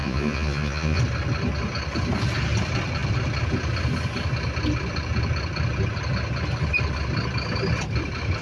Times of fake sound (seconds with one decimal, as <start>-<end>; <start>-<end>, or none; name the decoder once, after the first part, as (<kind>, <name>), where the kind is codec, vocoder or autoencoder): 0.0-1.0 (vocoder, Vocos)